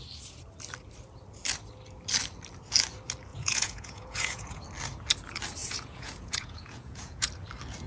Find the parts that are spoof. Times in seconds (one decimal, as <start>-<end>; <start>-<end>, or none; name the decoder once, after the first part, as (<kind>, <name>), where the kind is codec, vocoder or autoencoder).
3.3-4.6 (vocoder, Vocos); 5.6-7.3